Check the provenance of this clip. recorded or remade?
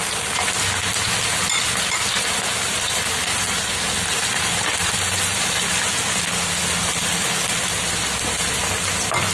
recorded